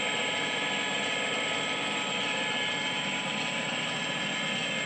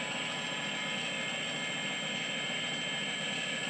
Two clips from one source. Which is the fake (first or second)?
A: first